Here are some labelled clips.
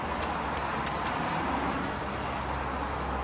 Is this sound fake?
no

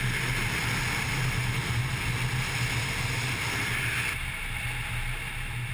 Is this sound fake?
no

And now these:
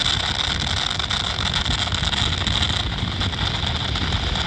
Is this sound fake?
no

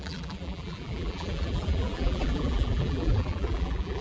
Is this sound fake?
yes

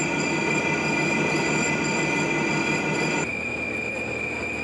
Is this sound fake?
no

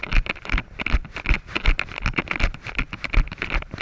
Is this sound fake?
yes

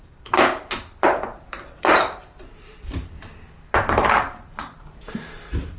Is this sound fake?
yes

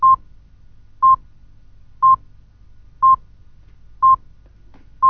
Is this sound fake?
no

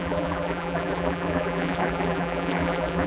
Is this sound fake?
yes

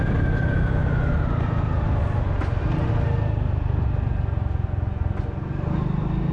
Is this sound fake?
no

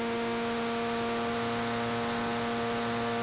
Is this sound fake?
no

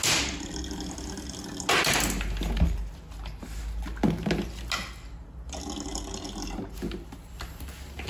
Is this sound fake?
no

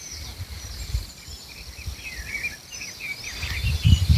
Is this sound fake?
yes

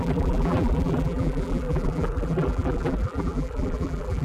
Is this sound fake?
yes